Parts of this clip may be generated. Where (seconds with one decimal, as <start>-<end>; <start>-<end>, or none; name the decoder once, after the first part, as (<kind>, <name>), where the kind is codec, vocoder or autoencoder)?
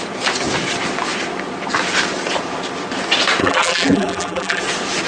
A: 3.4-4.6 (vocoder, BigVGAN v2)